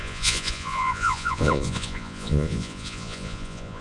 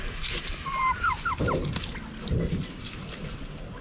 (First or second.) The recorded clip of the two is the second